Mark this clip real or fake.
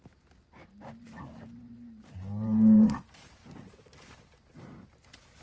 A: fake